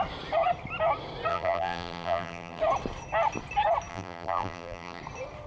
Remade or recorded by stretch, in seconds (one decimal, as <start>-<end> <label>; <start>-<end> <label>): 0.0-1.3 recorded; 1.3-2.6 remade; 2.6-3.9 recorded; 3.9-5.0 remade; 5.0-5.5 recorded